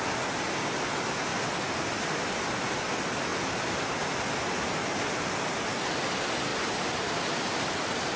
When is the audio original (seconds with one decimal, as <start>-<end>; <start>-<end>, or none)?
0.0-8.2